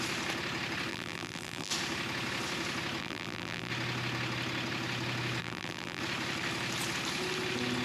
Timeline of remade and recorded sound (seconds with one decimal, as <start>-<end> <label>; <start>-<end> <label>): 0.0-0.9 recorded; 0.9-1.7 remade; 1.7-3.0 recorded; 3.0-3.7 remade; 3.7-5.4 recorded; 5.4-6.0 remade; 6.0-7.8 recorded